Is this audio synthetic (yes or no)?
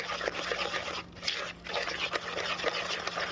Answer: no